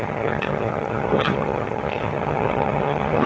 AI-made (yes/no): yes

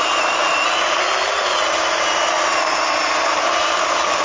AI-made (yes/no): no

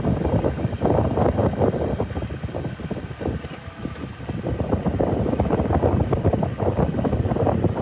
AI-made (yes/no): no